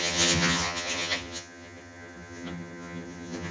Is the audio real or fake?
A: fake